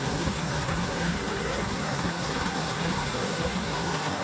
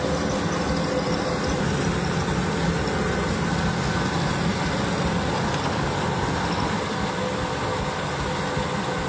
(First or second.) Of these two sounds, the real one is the second